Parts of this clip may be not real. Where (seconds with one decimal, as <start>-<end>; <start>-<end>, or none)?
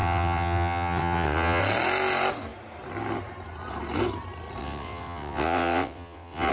0.0-1.6; 4.6-6.5